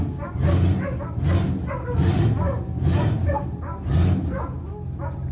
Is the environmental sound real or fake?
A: real